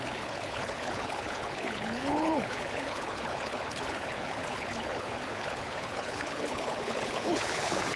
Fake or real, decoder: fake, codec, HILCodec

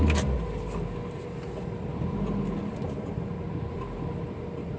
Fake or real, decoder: real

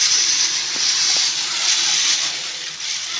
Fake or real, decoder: fake, vocoder, BigVGAN v2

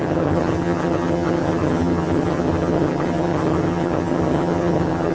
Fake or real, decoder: fake, vocoder, HiFi-GAN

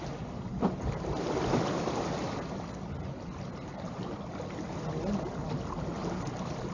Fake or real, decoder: real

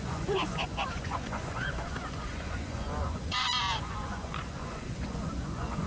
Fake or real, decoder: fake, vocoder, Vocos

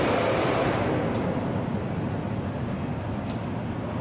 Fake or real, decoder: real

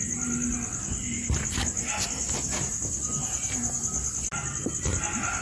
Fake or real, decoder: real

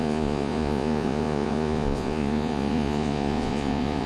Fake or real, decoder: fake, vocoder, Vocos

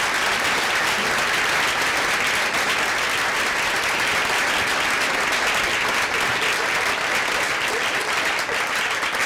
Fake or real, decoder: real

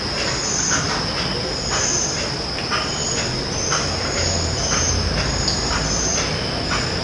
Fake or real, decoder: real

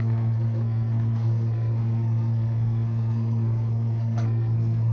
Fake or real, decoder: fake, codec, SNAC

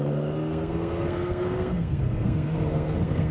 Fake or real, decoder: fake, codec, SNAC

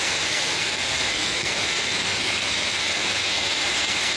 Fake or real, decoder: fake, codec, SNAC